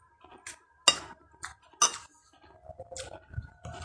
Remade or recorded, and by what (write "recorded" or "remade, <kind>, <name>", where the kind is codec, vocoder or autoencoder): recorded